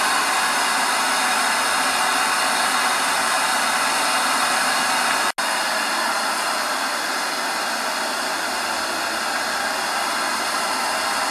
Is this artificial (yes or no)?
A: no